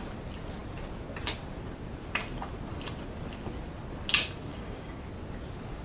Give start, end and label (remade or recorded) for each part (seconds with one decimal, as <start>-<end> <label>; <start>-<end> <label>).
0.0-4.5 recorded; 4.5-5.0 remade; 5.0-5.8 recorded